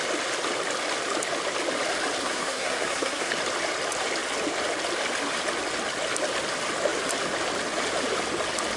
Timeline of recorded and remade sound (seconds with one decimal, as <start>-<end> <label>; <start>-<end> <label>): 0.0-2.2 recorded; 2.2-3.3 remade; 3.3-8.8 recorded